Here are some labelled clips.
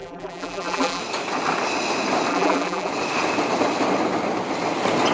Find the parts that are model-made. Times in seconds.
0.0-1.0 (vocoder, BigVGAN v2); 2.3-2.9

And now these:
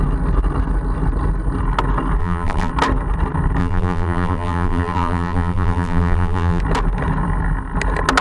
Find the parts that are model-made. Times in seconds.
2.2-2.7 (vocoder, BigVGAN v2); 3.6-6.6